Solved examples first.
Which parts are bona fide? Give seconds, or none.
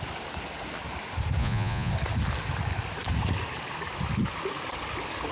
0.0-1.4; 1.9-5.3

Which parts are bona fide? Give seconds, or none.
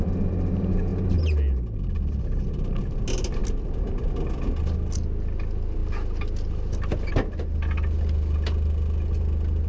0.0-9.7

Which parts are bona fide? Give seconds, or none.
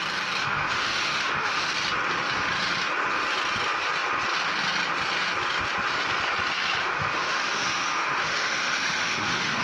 0.0-0.4; 1.7-6.8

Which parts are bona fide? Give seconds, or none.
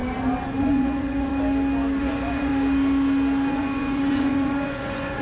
0.0-0.6; 1.3-2.0; 2.5-3.5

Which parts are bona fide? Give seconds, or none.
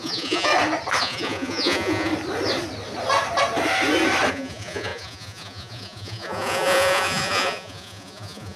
0.5-1.0; 2.1-4.3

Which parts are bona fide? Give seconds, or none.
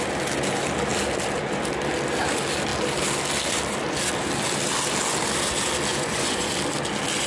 0.0-5.9; 6.5-7.3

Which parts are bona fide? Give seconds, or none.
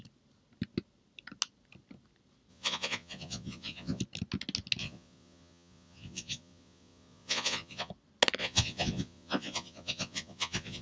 0.0-2.5; 4.0-4.8; 7.9-8.4